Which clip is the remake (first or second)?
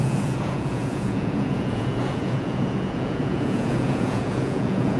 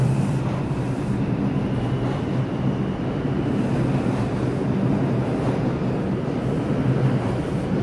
first